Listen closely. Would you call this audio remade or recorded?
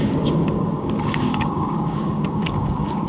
remade